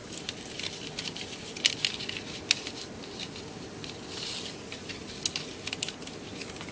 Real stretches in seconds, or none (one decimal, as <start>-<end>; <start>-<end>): 0.0-6.7